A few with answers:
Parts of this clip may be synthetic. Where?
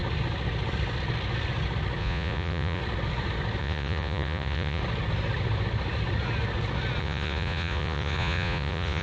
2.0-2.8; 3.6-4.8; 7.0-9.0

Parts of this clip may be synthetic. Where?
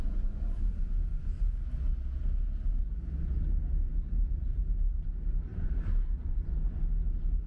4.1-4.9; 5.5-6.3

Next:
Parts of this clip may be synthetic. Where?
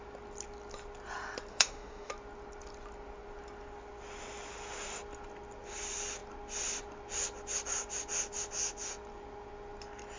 1.5-2.1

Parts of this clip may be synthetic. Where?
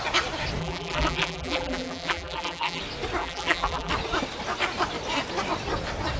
0.6-2.8; 3.2-3.9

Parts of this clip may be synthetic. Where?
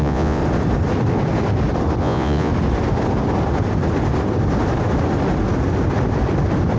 0.0-0.4; 2.0-2.5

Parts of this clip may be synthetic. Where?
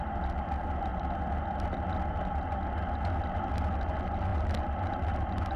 none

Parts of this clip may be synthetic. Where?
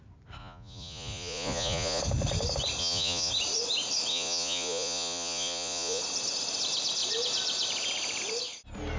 0.4-2.0; 2.8-3.3; 4.1-6.0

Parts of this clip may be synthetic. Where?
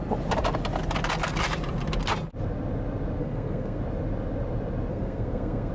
3.2-3.8; 4.9-5.7